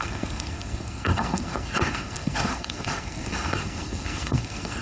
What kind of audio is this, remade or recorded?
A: remade